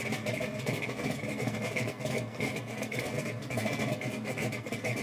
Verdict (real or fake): fake